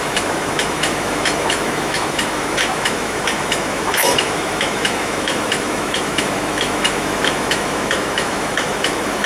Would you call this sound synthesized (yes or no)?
yes